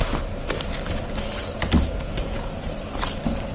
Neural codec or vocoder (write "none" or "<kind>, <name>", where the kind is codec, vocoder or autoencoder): none